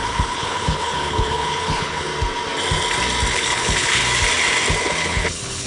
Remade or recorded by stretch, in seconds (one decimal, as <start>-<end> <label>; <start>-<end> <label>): 0.0-2.1 remade; 2.1-3.3 recorded; 3.3-4.0 remade; 4.0-4.8 recorded; 4.8-5.7 remade